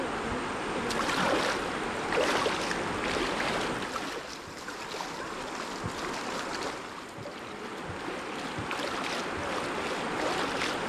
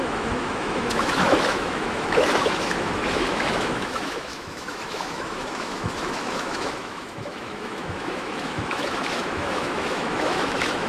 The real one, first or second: first